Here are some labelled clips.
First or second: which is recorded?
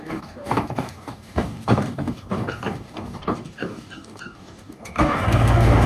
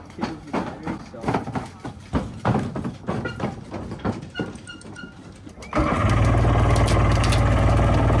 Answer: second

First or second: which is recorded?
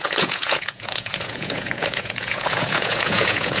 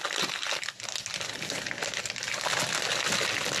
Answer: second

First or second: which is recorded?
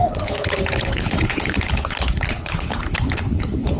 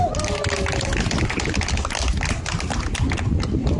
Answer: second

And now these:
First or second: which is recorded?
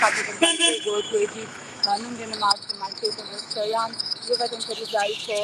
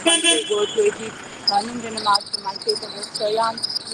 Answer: second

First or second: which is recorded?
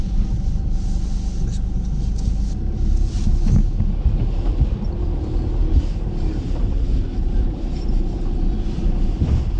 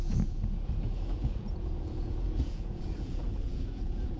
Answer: first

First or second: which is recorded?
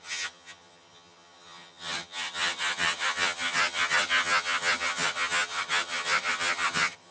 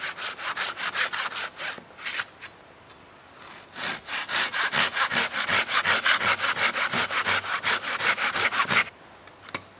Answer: second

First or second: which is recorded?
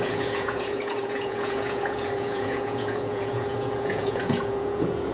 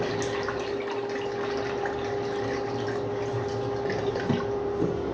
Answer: second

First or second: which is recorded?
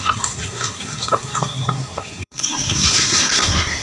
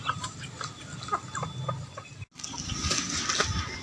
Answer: second